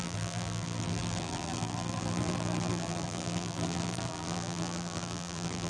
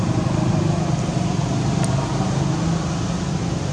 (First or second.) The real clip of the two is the second